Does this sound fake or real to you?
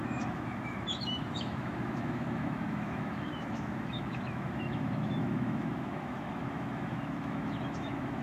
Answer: fake